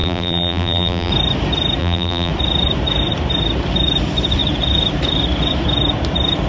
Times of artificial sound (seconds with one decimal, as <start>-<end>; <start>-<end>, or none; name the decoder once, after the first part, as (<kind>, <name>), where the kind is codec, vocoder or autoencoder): 0.0-1.1 (vocoder, BigVGAN v2); 1.8-2.3